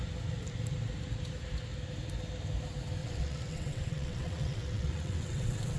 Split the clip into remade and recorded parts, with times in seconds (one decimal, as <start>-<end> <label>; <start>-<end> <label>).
0.0-3.0 recorded; 3.0-5.8 remade